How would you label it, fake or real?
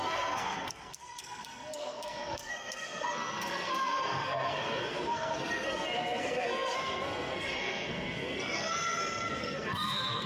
fake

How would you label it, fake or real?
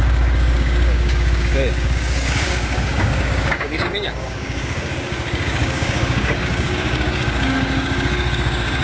fake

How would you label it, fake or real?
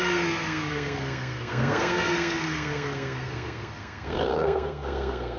fake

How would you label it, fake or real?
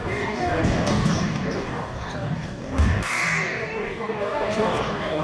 fake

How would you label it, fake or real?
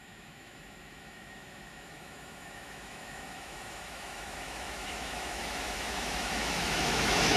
fake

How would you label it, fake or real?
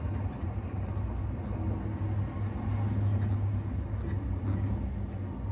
real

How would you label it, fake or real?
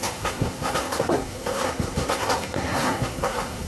fake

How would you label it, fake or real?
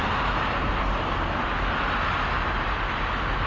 real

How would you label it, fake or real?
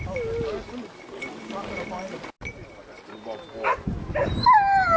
real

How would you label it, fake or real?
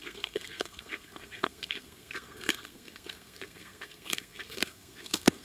fake